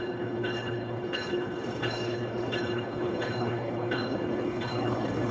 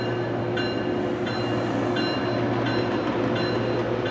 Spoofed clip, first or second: first